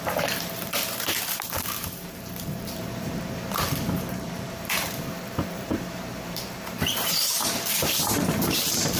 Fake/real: fake